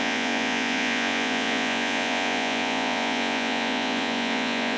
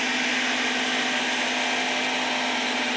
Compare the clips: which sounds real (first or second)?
second